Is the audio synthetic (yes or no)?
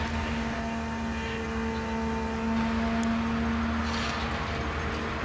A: no